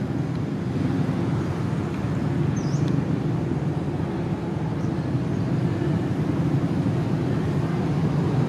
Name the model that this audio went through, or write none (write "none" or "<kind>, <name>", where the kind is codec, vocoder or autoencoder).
none